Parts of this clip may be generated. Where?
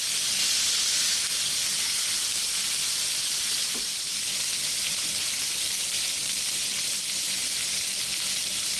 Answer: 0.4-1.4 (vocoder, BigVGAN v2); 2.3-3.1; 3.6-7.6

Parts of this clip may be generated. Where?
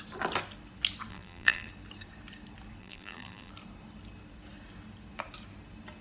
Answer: 1.1-1.7 (vocoder, BigVGAN v2); 2.8-3.5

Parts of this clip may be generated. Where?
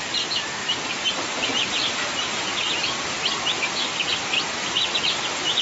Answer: 0.6-2.5 (vocoder, BigVGAN v2)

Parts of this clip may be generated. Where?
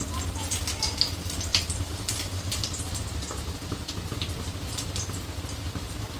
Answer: 1.5-5.2 (vocoder, BigVGAN v2)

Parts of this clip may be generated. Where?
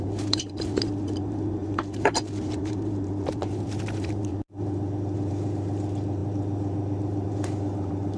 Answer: 0.0-8.2 (vocoder, BigVGAN v2)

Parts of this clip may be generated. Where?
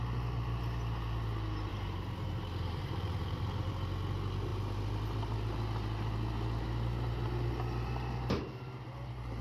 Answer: 1.7-3.7 (vocoder, BigVGAN v2)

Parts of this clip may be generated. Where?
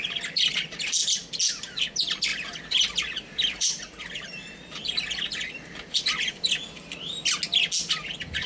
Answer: 2.3-7.4 (vocoder, BigVGAN v2)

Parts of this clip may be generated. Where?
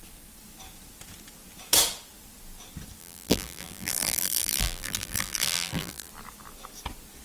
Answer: 3.0-6.1 (vocoder, BigVGAN v2)